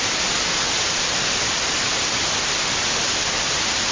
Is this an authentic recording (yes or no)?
no